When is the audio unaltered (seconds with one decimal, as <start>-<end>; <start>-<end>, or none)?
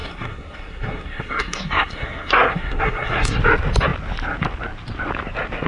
3.4-5.7